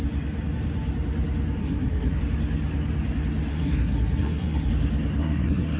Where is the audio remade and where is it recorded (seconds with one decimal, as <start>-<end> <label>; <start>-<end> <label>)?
0.0-1.6 recorded; 1.6-2.2 remade; 2.2-3.5 recorded; 3.5-4.7 remade; 4.7-5.2 recorded; 5.2-5.8 remade